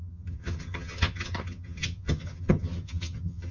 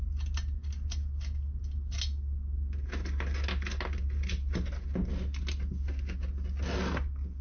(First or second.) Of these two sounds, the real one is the second